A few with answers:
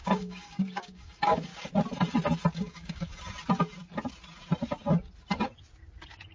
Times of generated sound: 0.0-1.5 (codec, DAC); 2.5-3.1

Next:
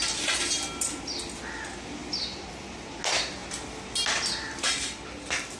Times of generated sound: none

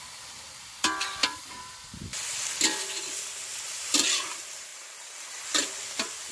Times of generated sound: 1.2-2.8 (vocoder, BigVGAN v2); 3.5-4.2

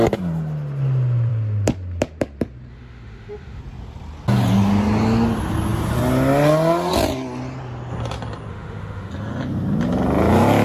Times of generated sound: 2.7-3.6 (autoencoder, DAC-VAE); 8.5-9.1